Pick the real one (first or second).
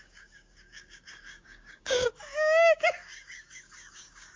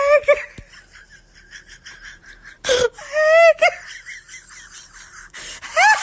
second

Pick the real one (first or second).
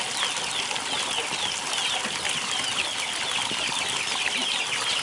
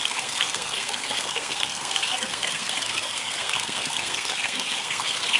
first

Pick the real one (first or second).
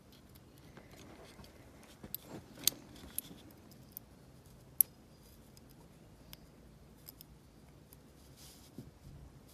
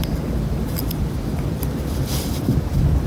first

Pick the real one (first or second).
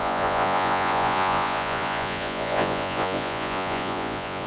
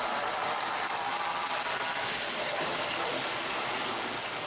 second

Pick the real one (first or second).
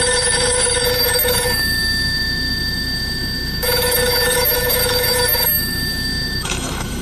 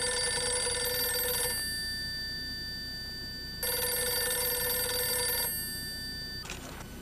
second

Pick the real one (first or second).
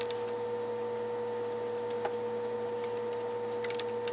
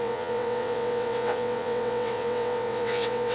first